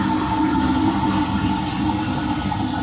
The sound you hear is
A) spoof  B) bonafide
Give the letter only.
A